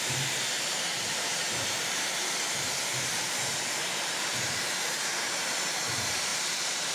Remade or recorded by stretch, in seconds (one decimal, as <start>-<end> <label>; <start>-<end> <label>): 0.0-6.3 remade; 6.3-6.9 recorded